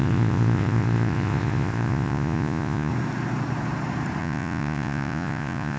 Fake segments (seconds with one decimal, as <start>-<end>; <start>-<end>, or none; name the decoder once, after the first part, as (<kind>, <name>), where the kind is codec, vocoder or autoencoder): 0.0-2.9 (vocoder, Vocos); 4.2-5.8